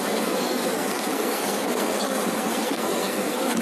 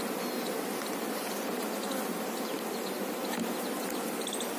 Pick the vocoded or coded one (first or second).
first